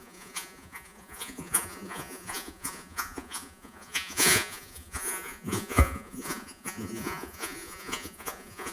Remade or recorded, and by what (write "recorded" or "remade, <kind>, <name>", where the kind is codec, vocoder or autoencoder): remade, vocoder, Vocos